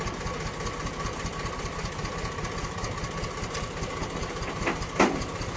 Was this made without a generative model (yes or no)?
yes